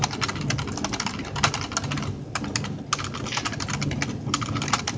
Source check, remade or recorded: recorded